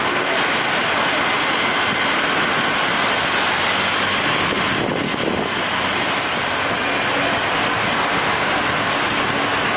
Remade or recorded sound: recorded